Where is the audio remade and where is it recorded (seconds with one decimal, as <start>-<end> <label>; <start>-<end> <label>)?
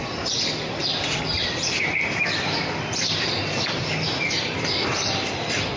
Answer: 0.0-0.8 recorded; 0.8-4.3 remade; 4.3-5.8 recorded